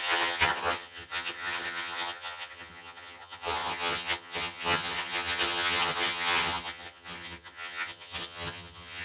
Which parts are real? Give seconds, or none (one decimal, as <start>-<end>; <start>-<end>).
none